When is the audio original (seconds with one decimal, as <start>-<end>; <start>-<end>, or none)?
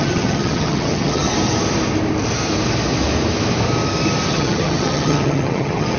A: 1.3-4.3